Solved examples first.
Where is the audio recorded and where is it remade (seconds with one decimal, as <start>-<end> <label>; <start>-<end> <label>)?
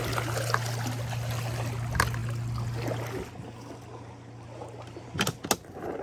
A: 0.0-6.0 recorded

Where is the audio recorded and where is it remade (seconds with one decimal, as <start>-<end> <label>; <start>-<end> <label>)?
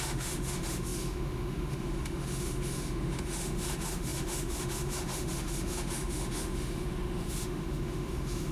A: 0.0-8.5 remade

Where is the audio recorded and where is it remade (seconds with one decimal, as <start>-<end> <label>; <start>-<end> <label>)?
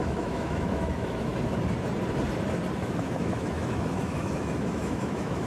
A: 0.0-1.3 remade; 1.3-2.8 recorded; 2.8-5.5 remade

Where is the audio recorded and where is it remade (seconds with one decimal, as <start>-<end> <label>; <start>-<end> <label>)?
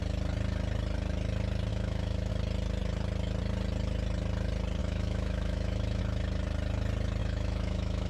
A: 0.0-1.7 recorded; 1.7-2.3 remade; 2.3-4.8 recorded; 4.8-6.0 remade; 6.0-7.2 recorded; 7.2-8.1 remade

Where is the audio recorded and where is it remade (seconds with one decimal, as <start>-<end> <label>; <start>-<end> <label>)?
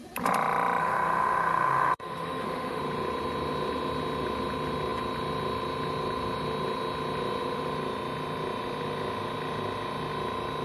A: 0.0-0.8 recorded; 0.8-2.8 remade; 2.8-10.6 recorded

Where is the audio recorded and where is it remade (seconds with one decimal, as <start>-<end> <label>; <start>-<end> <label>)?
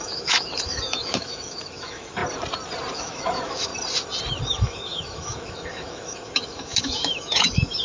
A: 0.0-2.2 remade; 2.2-2.9 recorded; 2.9-3.7 remade; 3.7-4.4 recorded; 4.4-7.8 remade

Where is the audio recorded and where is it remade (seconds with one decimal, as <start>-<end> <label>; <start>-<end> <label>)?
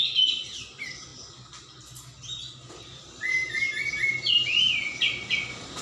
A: 0.0-5.8 recorded